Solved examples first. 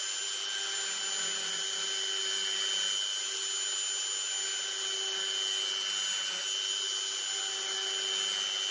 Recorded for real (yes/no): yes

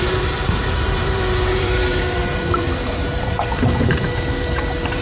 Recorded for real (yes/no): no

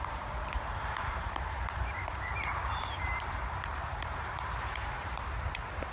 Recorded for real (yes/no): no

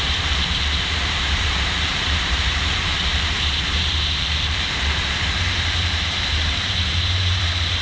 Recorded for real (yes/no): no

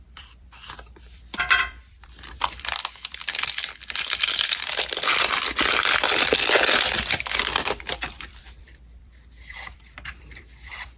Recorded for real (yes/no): no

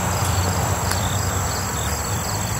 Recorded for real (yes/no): no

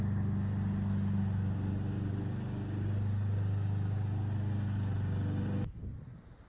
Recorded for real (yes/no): yes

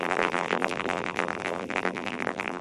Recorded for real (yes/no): no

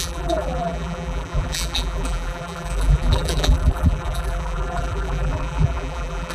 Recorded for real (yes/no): no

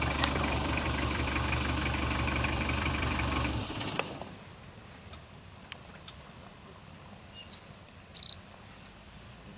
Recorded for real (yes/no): no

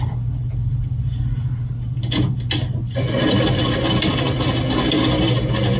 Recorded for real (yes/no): yes